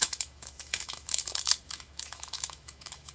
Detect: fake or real fake